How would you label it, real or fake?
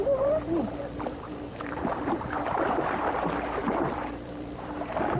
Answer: fake